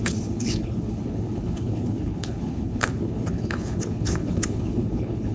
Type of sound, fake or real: fake